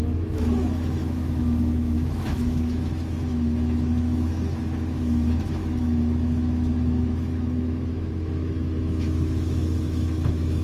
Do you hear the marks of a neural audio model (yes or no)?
yes